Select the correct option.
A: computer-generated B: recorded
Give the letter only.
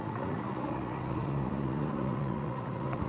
A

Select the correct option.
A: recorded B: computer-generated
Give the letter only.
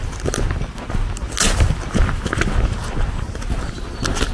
A